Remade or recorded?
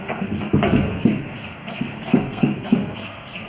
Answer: remade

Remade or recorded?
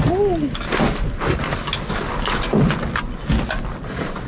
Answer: recorded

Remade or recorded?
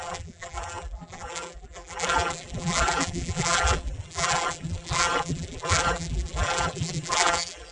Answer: remade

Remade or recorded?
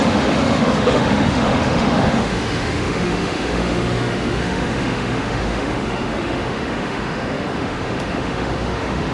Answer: remade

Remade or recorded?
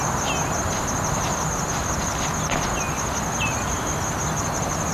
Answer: recorded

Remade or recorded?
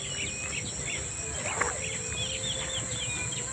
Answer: recorded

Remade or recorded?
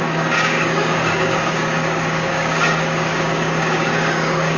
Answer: remade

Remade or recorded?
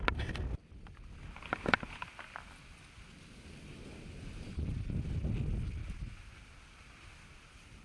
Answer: recorded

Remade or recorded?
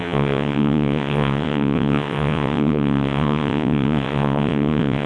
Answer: remade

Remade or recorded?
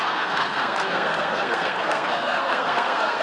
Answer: remade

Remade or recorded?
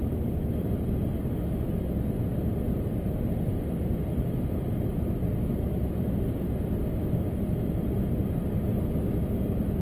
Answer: recorded